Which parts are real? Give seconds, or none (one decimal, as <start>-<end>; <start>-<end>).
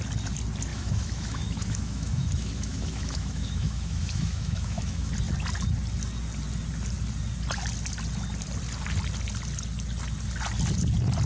0.0-0.7; 5.1-11.3